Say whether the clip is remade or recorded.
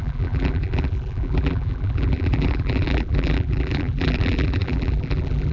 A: remade